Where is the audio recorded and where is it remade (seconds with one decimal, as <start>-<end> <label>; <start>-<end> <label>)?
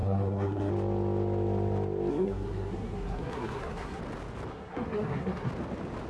0.0-0.7 remade; 0.7-2.1 recorded; 2.1-4.0 remade; 4.0-4.5 recorded; 4.5-5.5 remade; 5.5-6.1 recorded